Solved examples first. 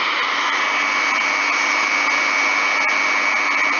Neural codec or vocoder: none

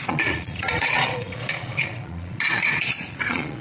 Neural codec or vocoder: vocoder, Vocos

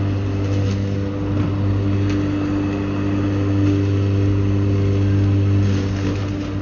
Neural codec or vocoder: none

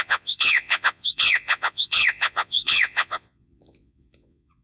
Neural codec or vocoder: vocoder, Vocos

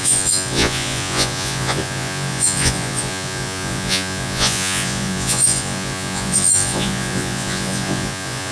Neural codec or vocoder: vocoder, Vocos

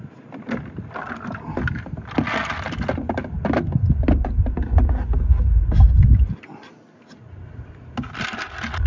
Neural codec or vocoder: none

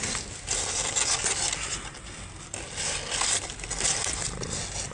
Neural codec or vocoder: none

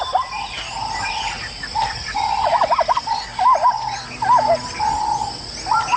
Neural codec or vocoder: none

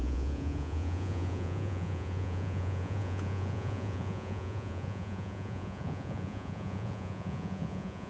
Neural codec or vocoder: vocoder, Vocos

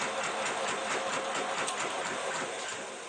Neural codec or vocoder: none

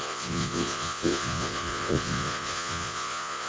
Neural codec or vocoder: vocoder, Vocos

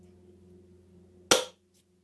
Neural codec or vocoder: none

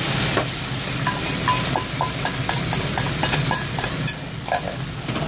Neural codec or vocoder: none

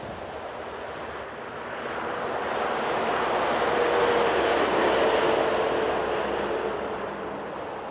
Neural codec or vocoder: none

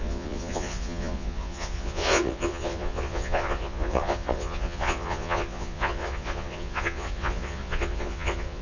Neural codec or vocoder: vocoder, Vocos